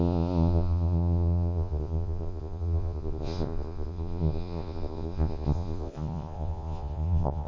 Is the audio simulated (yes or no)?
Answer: yes